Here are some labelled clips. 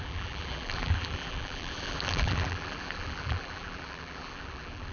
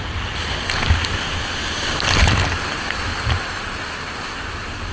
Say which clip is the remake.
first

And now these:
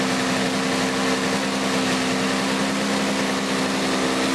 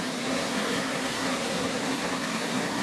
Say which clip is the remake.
second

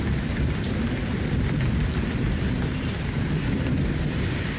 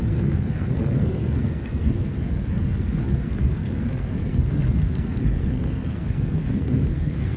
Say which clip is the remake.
second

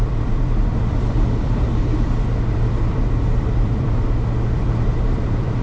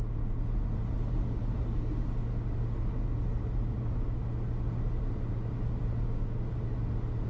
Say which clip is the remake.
first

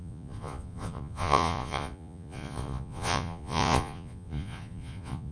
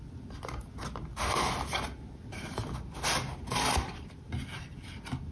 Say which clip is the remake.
first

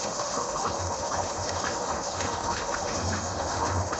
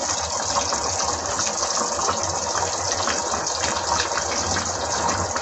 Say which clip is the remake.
first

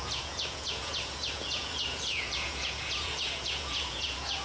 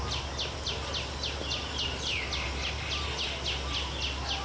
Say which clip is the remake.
first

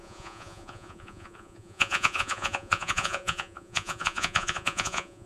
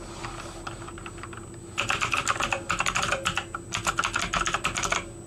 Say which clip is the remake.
first